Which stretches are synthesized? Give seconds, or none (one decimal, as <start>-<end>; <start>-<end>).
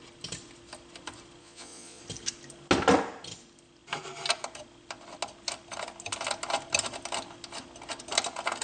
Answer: 1.4-2.0